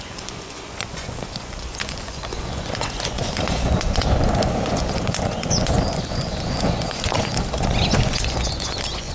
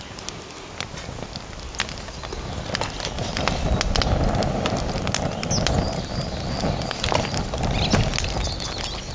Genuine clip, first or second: second